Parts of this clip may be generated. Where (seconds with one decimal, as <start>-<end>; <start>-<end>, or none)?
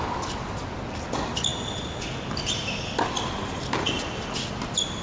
none